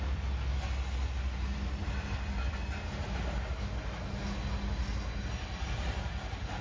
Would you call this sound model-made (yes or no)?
no